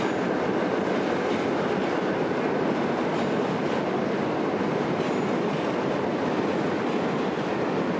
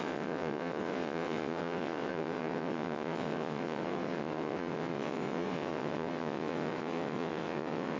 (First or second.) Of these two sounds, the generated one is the second